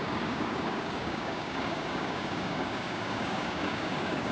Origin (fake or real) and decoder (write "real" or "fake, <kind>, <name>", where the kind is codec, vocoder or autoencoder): fake, codec, DAC